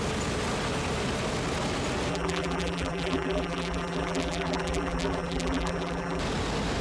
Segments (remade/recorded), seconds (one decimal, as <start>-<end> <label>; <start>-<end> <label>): 0.0-2.1 recorded; 2.1-6.2 remade; 6.2-6.8 recorded

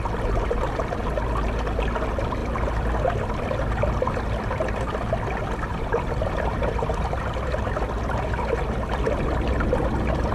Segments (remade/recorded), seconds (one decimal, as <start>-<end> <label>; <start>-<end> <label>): 0.0-5.7 recorded; 5.7-7.6 remade; 7.6-10.3 recorded

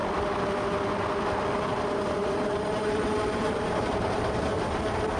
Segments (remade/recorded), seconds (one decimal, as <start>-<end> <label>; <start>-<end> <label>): 0.0-1.7 recorded; 1.7-4.8 remade; 4.8-5.2 recorded

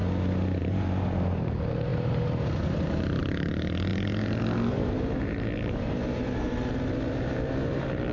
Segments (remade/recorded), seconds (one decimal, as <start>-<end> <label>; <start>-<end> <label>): 0.0-0.6 recorded; 0.6-3.9 remade; 3.9-4.7 recorded; 4.7-8.1 remade

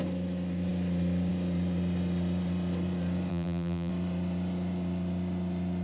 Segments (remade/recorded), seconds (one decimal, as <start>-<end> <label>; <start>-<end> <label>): 0.0-3.3 recorded; 3.3-3.9 remade; 3.9-5.8 recorded